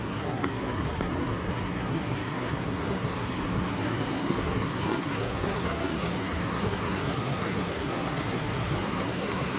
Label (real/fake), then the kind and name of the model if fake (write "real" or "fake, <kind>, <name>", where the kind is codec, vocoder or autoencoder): fake, codec, SNAC